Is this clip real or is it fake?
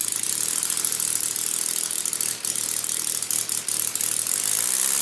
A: real